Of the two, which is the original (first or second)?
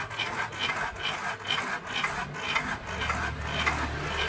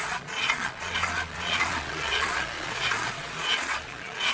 first